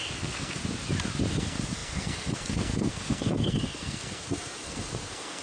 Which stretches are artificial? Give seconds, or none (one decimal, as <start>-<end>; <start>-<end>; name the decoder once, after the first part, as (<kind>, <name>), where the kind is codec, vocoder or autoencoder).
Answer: 0.0-0.6 (codec, SNAC); 1.3-5.4